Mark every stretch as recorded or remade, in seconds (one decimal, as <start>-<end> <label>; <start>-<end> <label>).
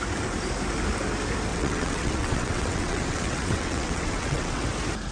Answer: 0.0-1.5 recorded; 1.5-4.6 remade; 4.6-5.1 recorded